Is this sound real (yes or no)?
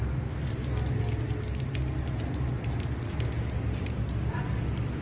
yes